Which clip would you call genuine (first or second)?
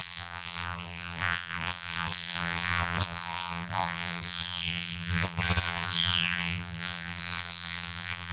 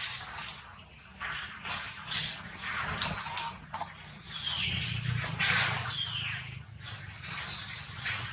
second